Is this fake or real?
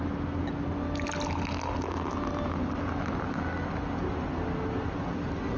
real